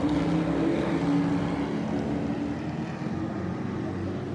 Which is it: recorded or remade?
recorded